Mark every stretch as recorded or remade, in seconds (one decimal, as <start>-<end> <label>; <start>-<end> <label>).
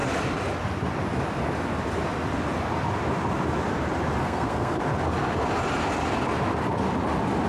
0.0-4.2 recorded; 4.2-4.8 remade; 4.8-7.5 recorded